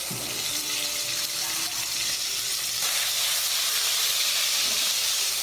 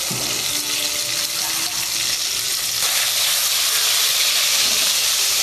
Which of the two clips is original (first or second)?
second